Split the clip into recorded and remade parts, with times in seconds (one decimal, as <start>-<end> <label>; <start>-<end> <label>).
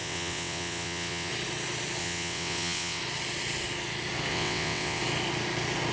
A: 0.0-1.3 remade; 1.3-2.0 recorded; 2.0-3.0 remade; 3.0-4.3 recorded; 4.3-5.0 remade; 5.0-5.9 recorded